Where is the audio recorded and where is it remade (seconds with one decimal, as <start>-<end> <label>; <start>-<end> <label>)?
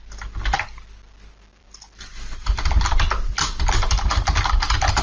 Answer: 0.0-1.5 recorded; 1.5-5.0 remade